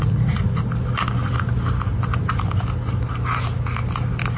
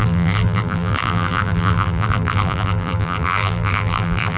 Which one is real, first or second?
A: first